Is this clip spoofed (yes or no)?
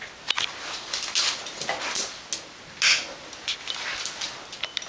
no